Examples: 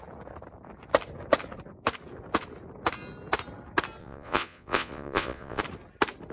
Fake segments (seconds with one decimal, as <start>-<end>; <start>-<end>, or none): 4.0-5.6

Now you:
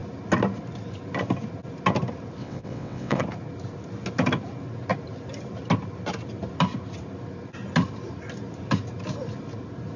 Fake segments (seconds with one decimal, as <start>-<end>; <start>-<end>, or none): 2.4-3.2

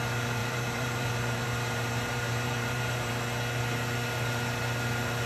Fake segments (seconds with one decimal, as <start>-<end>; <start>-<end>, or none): 0.4-3.1

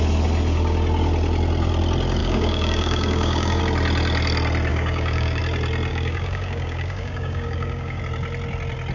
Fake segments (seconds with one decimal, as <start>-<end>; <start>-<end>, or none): 2.2-3.6; 4.7-5.4; 5.9-8.0

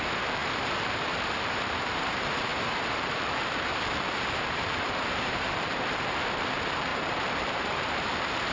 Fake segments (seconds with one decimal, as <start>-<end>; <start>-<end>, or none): 0.0-8.5

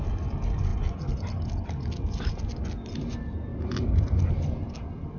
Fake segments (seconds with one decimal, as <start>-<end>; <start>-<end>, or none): none

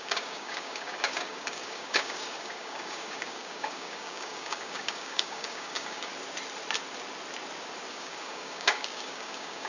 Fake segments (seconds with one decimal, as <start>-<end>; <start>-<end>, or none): 0.0-6.1; 7.9-9.7

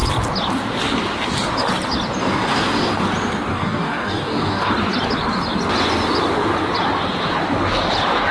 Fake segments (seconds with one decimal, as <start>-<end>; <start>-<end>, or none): 2.2-2.9; 3.5-4.7